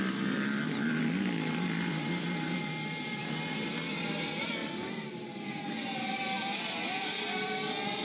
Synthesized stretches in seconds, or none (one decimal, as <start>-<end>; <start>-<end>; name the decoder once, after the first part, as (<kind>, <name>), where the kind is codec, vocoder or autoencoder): 1.9-2.7 (vocoder, BigVGAN v2)

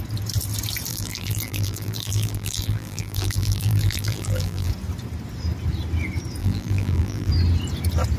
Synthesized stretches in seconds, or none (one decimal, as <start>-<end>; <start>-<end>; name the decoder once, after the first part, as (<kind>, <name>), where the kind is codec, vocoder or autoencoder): 0.9-4.7 (vocoder, BigVGAN v2); 6.4-7.3